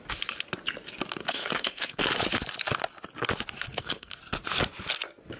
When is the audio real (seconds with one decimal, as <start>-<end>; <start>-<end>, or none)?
0.0-1.2; 2.0-3.7; 4.2-5.4

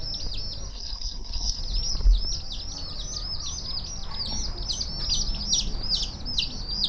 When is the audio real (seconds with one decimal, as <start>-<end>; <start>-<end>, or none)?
0.0-0.7; 1.6-6.9

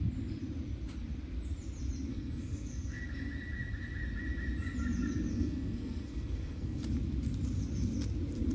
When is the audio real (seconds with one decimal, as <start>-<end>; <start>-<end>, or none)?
0.0-2.1; 3.0-5.3; 6.8-8.5

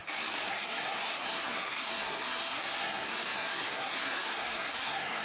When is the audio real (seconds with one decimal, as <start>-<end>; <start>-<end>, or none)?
0.0-0.5

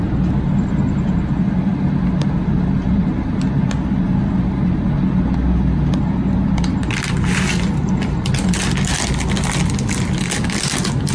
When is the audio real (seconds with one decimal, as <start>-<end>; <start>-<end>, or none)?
0.0-11.1

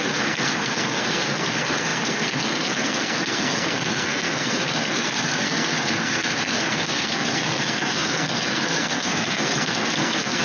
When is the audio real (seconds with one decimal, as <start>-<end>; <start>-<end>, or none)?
none

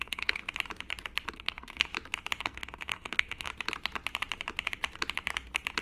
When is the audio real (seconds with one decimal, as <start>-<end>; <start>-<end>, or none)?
0.4-1.3; 1.9-2.4; 3.5-5.8